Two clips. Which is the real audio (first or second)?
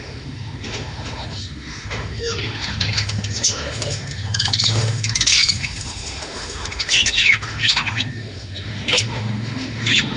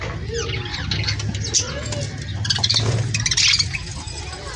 second